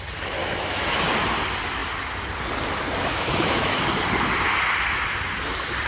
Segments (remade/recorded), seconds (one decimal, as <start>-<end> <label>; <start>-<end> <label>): 0.0-0.4 recorded; 0.4-1.1 remade; 1.1-3.1 recorded; 3.1-3.8 remade; 3.8-5.9 recorded